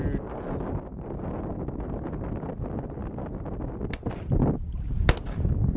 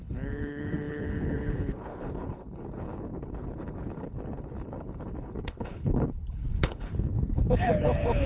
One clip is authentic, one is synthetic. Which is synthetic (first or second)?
second